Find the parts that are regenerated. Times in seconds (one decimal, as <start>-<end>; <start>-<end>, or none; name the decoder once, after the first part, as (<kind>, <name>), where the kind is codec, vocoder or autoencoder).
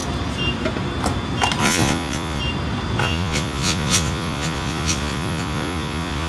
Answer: 1.6-2.4 (vocoder, Vocos); 3.0-6.3